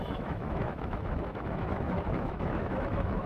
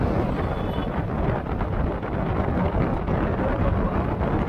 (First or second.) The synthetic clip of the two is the first